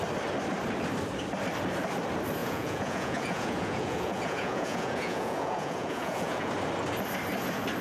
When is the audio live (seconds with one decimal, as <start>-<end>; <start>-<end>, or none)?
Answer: 0.0-2.4; 6.5-7.8